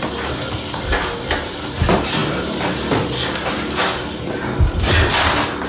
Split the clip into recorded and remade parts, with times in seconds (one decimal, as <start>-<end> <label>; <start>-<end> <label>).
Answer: 0.0-5.7 recorded